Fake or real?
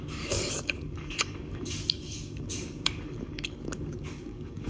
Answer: fake